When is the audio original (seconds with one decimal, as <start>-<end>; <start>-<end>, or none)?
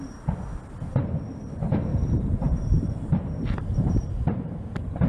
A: 0.0-1.9